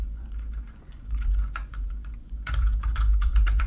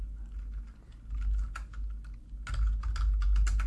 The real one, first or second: second